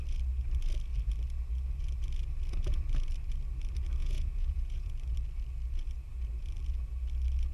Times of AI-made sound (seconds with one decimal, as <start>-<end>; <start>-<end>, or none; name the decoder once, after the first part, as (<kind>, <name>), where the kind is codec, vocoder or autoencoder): 4.0-4.9 (vocoder, Vocos)